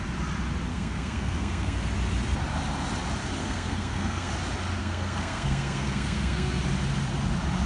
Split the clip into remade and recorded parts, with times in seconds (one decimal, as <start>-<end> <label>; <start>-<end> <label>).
0.0-0.7 recorded; 0.7-1.9 remade; 1.9-3.4 recorded; 3.4-4.3 remade; 4.3-4.8 recorded; 4.8-6.6 remade; 6.6-7.7 recorded